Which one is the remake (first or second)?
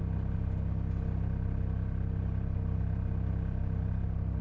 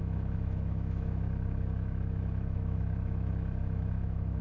second